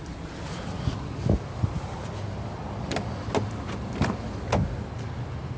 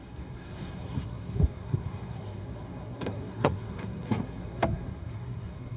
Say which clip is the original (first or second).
first